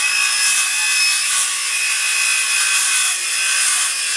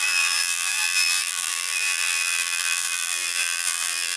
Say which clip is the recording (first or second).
first